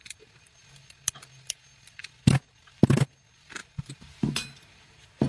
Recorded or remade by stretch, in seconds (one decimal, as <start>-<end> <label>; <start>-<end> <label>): 0.0-3.6 recorded; 3.6-4.3 remade; 4.3-5.3 recorded

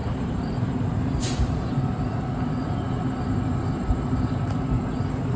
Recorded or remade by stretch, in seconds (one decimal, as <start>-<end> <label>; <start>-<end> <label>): 0.0-1.8 remade; 1.8-3.8 recorded; 3.8-4.3 remade; 4.3-5.4 recorded

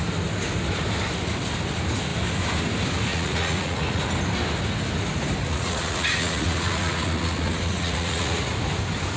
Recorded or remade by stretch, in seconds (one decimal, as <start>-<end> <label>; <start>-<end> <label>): 0.0-3.1 recorded; 3.1-4.0 remade; 4.0-5.4 recorded; 5.4-8.4 remade; 8.4-9.2 recorded

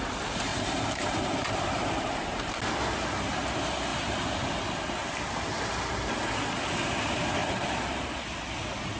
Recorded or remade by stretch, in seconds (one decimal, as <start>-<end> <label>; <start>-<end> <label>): 0.0-0.5 recorded; 0.5-2.5 remade; 2.5-3.9 recorded; 3.9-4.8 remade; 4.8-7.4 recorded; 7.4-8.2 remade; 8.2-9.0 recorded

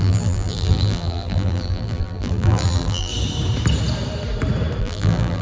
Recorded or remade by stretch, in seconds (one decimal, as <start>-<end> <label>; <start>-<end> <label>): 0.0-3.1 remade; 3.1-4.8 recorded; 4.8-5.4 remade